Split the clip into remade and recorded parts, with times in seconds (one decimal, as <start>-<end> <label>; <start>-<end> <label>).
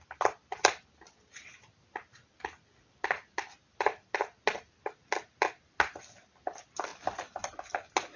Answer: 0.0-8.2 recorded